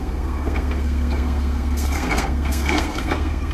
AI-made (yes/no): yes